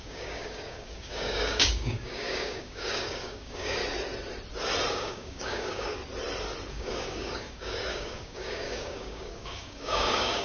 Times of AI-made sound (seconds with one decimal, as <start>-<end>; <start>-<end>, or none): 0.0-3.8; 4.9-6.0; 6.7-10.4